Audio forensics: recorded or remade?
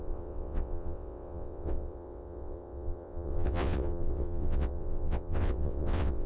remade